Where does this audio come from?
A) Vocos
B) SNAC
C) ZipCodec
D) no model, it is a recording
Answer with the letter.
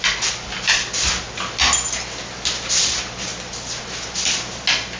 D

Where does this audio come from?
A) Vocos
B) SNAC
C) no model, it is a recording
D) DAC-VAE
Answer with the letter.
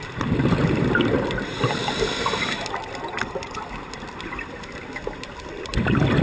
C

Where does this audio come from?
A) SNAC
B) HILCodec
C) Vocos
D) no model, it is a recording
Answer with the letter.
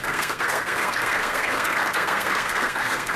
A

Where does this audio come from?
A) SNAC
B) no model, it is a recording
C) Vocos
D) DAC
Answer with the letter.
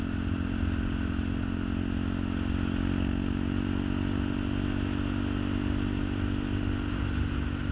B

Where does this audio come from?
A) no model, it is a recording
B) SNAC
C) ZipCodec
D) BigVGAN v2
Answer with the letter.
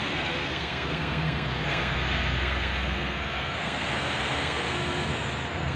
B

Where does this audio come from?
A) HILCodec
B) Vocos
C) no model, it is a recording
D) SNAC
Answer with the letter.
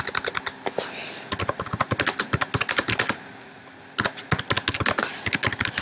C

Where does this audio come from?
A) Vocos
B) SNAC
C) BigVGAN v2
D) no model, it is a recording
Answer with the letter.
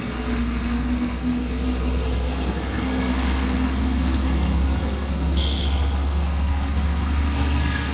B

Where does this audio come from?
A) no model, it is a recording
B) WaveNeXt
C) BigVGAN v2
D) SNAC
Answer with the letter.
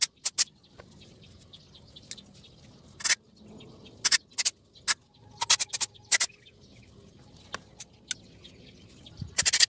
A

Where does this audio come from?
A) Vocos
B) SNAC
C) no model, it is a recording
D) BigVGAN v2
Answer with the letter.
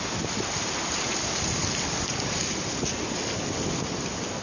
C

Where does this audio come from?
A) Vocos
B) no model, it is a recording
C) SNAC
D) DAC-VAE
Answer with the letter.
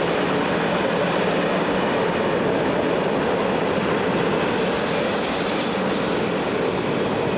B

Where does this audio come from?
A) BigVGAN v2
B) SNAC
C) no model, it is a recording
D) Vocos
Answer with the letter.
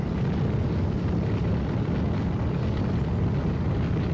C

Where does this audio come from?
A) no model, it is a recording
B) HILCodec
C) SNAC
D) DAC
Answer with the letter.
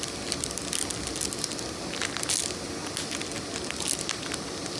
A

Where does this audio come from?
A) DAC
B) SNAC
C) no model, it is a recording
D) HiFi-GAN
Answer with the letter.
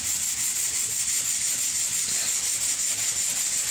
C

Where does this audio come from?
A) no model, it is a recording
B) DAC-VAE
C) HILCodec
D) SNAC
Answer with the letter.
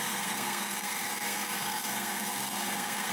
D